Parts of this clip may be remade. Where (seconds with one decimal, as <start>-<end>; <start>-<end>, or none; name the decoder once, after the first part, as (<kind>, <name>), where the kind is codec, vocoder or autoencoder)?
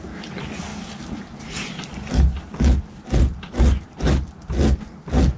none